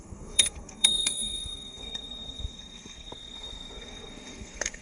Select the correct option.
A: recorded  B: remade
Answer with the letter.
B